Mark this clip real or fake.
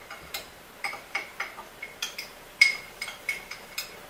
fake